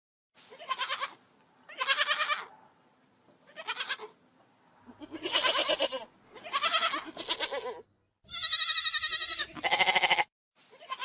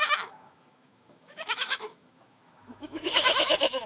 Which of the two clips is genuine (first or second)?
first